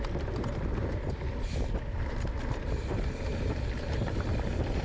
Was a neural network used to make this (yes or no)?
yes